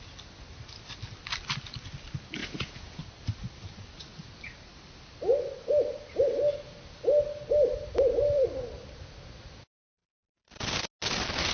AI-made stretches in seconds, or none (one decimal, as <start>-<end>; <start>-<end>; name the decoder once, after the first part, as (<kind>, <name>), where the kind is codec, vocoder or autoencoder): 2.4-3.0 (vocoder, Vocos)